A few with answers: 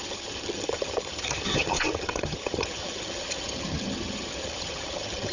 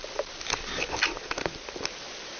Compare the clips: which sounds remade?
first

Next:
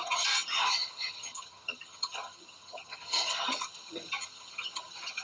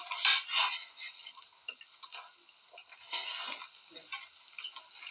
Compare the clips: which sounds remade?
first